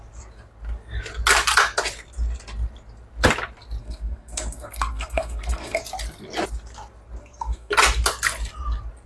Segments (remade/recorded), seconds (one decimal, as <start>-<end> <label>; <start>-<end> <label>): 0.0-3.8 recorded; 3.8-5.8 remade; 5.8-7.2 recorded; 7.2-7.7 remade; 7.7-9.1 recorded